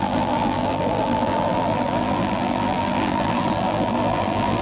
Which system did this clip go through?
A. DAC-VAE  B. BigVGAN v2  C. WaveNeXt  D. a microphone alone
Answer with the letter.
B